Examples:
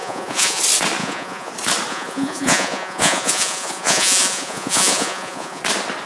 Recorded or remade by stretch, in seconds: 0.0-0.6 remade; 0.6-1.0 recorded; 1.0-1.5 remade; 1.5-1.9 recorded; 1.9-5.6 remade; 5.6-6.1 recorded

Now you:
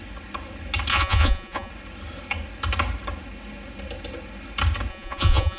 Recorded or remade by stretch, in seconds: 0.0-0.9 recorded; 0.9-1.7 remade; 1.7-4.9 recorded; 4.9-5.6 remade